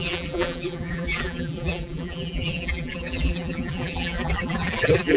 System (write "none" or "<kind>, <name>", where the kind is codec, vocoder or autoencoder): vocoder, BigVGAN v2